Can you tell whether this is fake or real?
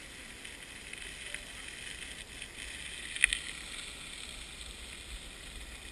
real